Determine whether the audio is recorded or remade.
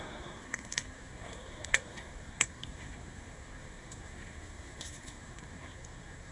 remade